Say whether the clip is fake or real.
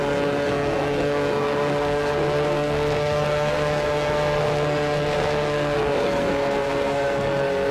fake